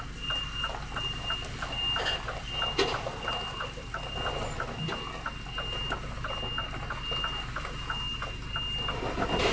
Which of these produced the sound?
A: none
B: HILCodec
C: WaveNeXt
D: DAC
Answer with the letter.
A